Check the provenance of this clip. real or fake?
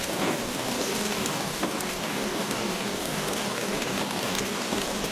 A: fake